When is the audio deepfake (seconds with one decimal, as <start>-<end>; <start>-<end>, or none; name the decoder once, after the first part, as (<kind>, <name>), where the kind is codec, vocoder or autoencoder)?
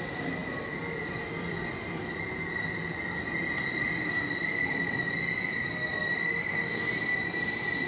0.4-2.0 (vocoder, BigVGAN v2); 2.8-5.0; 5.9-6.6